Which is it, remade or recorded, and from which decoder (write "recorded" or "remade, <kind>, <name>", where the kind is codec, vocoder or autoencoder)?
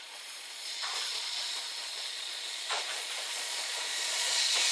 remade, vocoder, Vocos